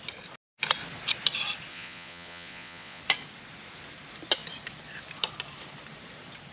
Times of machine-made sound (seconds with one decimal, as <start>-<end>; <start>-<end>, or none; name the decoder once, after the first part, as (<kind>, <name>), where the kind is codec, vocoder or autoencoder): 1.7-3.0 (vocoder, Vocos)